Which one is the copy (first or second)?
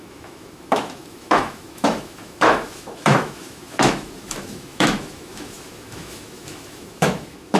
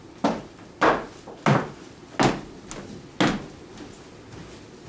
first